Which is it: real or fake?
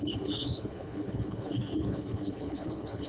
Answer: fake